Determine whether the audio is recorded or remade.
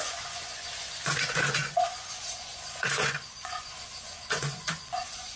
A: remade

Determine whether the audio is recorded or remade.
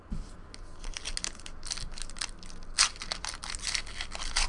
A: recorded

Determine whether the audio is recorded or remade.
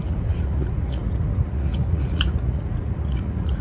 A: remade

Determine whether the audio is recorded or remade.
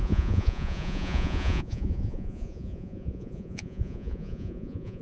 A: remade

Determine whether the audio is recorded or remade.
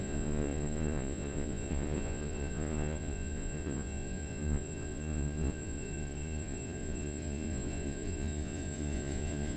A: remade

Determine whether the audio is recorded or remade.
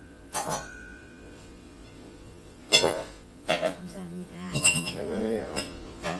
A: remade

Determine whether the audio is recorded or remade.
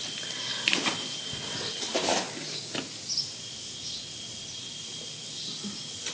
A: recorded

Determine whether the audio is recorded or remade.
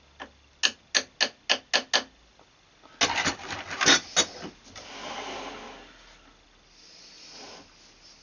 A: recorded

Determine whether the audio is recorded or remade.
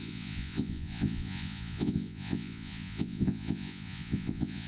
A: remade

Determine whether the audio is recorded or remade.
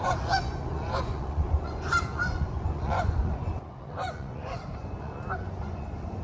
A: remade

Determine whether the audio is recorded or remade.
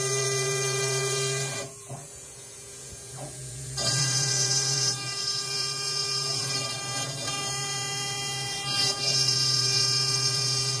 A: remade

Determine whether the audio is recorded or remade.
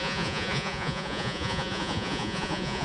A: remade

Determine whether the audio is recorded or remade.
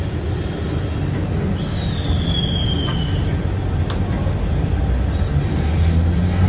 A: recorded